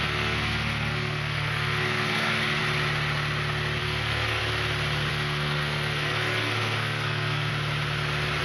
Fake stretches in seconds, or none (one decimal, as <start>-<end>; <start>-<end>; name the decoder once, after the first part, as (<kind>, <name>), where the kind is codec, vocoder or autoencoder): 0.0-2.6 (codec, SNAC); 3.8-4.4; 5.1-7.5